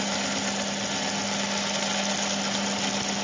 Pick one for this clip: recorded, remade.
recorded